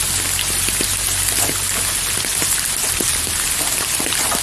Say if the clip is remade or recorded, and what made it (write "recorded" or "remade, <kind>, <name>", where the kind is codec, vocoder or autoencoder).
recorded